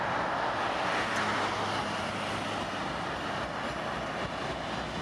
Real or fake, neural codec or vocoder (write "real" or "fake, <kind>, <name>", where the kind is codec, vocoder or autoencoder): real